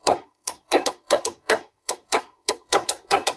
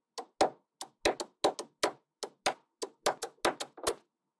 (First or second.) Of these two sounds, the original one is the second